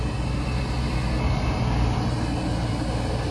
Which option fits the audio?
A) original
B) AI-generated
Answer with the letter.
A